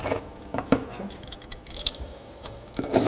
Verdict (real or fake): fake